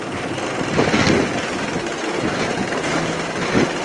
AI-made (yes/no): no